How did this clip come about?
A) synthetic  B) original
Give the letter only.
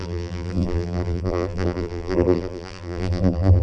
A